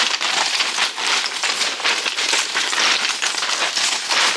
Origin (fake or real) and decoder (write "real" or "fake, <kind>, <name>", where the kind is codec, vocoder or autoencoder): real